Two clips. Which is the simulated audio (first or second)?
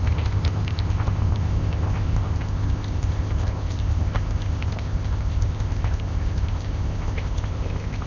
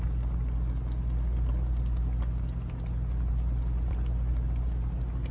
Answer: first